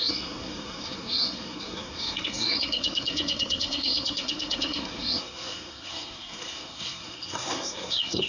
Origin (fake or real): fake